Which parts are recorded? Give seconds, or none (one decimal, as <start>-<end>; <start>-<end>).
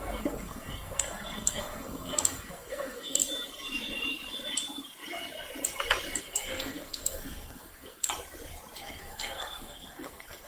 3.2-6.2; 8.1-8.8